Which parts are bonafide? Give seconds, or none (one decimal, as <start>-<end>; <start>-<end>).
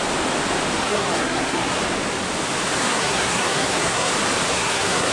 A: 0.0-0.8; 1.8-2.8; 4.1-4.5